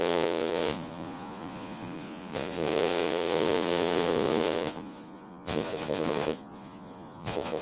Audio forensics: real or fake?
fake